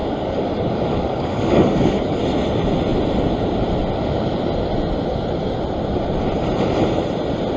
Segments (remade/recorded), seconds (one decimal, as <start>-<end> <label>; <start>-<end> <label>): 0.0-2.2 remade; 2.2-7.6 recorded